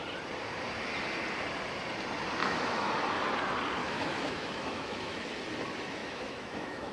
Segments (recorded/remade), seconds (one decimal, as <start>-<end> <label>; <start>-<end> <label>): 0.0-2.4 recorded; 2.4-2.9 remade; 2.9-3.8 recorded; 3.8-5.1 remade; 5.1-6.0 recorded; 6.0-6.9 remade

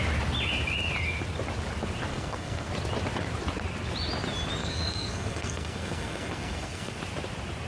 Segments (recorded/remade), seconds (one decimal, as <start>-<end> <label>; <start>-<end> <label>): 0.0-2.1 recorded; 2.1-2.7 remade; 2.7-4.6 recorded; 4.6-7.0 remade; 7.0-7.7 recorded

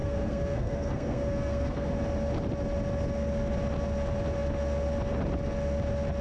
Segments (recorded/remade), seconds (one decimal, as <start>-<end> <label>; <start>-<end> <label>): 0.0-1.9 remade; 1.9-6.2 recorded

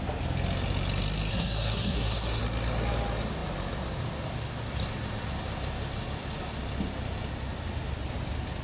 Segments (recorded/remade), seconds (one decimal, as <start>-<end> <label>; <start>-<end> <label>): 0.0-1.3 recorded; 1.3-2.4 remade; 2.4-8.6 recorded

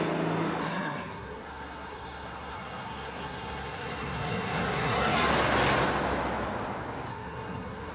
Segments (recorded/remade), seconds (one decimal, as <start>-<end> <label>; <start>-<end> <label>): 0.0-0.6 recorded; 0.6-5.3 remade; 5.3-7.1 recorded; 7.1-7.9 remade

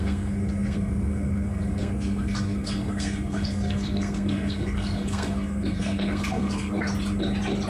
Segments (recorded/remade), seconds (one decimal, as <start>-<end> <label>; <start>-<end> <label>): 0.0-6.9 remade; 6.9-7.7 recorded

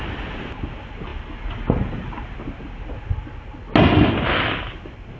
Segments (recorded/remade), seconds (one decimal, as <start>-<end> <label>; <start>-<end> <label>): 0.0-5.2 recorded

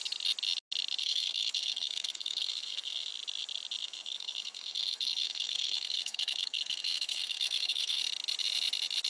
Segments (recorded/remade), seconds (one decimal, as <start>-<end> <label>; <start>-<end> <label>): 0.0-1.0 recorded; 1.0-3.1 remade; 3.1-3.8 recorded; 3.8-8.0 remade; 8.0-9.1 recorded